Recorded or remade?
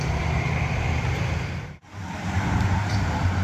remade